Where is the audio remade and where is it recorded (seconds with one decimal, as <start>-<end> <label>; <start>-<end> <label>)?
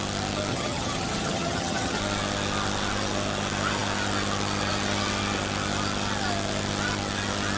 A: 0.0-0.5 recorded; 0.5-2.0 remade; 2.0-7.6 recorded